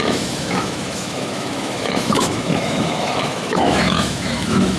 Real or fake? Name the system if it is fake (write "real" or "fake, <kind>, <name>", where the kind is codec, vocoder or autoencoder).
fake, autoencoder, DAC-VAE